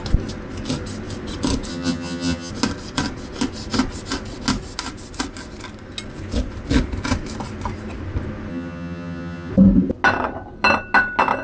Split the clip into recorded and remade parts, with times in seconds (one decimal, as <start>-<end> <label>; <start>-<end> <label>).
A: 0.0-1.7 recorded; 1.7-2.5 remade; 2.5-8.5 recorded; 8.5-9.5 remade; 9.5-11.4 recorded